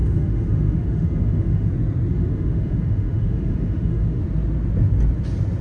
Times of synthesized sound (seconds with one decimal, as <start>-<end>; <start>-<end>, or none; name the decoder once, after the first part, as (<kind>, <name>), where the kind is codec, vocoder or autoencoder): 0.0-1.7 (autoencoder, DAC-VAE); 2.1-4.2